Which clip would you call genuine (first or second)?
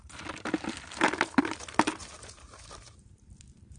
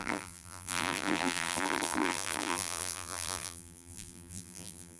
first